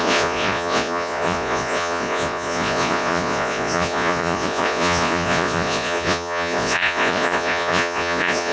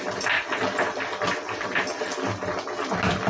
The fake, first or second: first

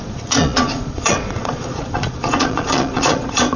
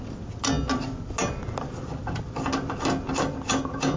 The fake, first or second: first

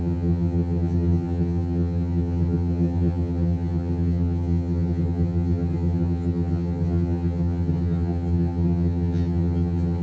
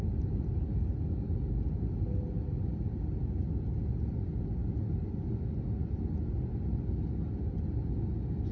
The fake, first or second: first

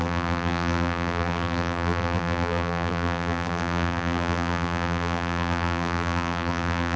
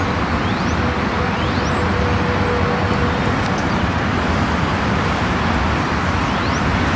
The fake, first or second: first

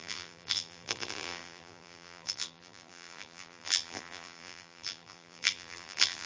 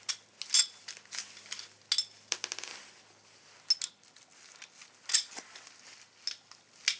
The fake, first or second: first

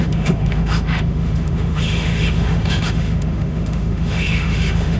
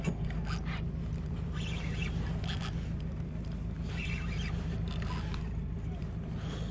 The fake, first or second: first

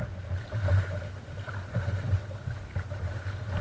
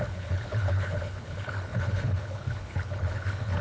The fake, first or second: second